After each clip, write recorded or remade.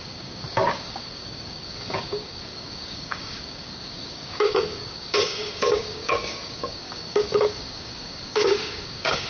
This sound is remade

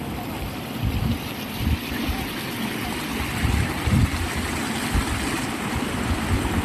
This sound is recorded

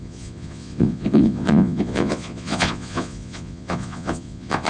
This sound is remade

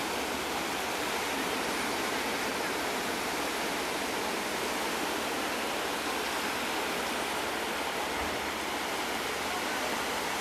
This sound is recorded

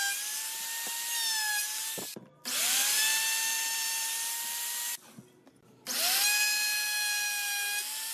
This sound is recorded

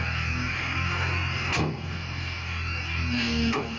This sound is remade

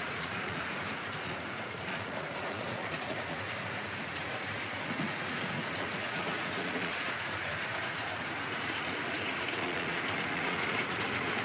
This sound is remade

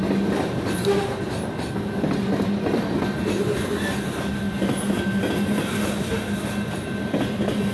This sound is recorded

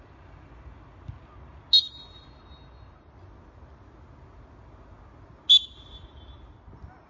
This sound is recorded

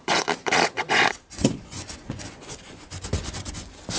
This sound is remade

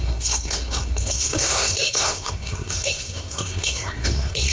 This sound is remade